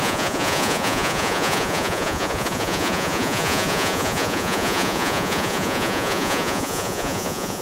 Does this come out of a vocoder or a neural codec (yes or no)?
yes